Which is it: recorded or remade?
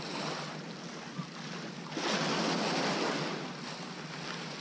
recorded